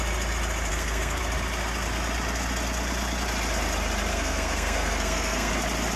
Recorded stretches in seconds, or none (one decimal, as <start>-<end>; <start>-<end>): 0.0-0.7; 1.2-4.1; 5.5-6.0